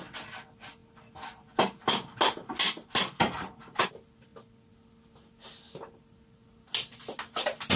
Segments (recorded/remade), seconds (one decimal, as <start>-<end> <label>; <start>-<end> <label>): 0.0-7.8 recorded